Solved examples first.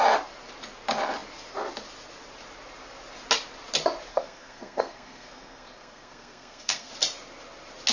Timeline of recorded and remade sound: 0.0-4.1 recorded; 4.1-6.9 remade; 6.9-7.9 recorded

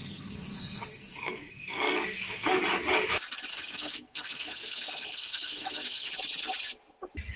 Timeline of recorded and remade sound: 0.0-2.6 remade; 2.6-3.5 recorded; 3.5-6.1 remade; 6.1-7.4 recorded

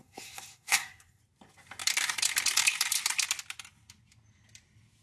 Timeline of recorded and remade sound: 0.0-1.2 remade; 1.2-5.0 recorded

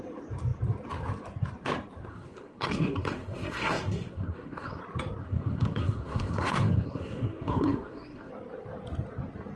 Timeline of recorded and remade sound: 0.0-2.1 recorded; 2.1-4.8 remade; 4.8-5.2 recorded; 5.2-8.3 remade; 8.3-9.6 recorded

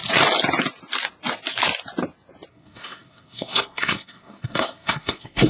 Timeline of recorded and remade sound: 0.0-2.5 recorded; 2.5-5.5 remade

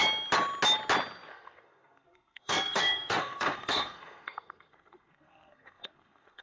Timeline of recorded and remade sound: 0.0-1.3 recorded; 1.3-6.4 remade

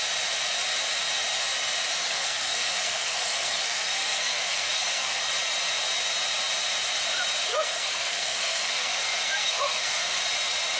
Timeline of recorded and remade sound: 0.0-2.0 recorded; 2.0-5.2 remade; 5.2-7.5 recorded; 7.5-10.2 remade; 10.2-10.8 recorded

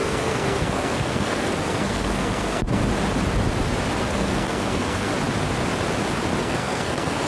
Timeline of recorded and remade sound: 0.0-2.8 remade; 2.8-4.0 recorded; 4.0-5.1 remade; 5.1-6.4 recorded; 6.4-7.3 remade